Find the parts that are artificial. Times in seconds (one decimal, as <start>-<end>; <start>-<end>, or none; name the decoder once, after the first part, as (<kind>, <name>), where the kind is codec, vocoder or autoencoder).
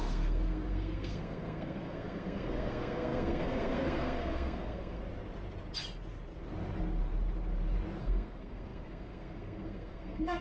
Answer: 0.0-5.0 (codec, SNAC); 8.0-10.4